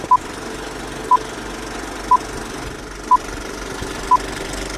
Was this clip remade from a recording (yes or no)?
no